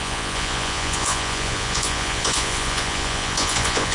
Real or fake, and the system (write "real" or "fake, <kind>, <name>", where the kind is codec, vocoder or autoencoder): fake, vocoder, Vocos